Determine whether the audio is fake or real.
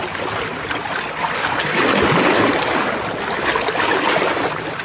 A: real